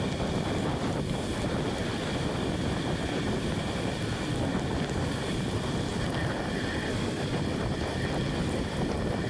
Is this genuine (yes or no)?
yes